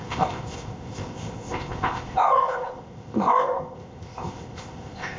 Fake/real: fake